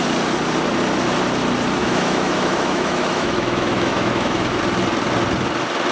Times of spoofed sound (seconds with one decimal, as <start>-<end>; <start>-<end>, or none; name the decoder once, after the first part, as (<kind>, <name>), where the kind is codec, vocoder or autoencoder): 1.8-4.6 (autoencoder, DAC-VAE)